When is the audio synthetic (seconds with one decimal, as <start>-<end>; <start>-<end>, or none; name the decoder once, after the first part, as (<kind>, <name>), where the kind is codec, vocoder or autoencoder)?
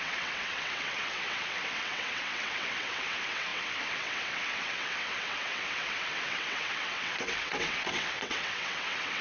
0.0-9.2 (vocoder, WaveNeXt)